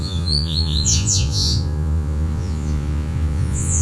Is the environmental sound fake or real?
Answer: fake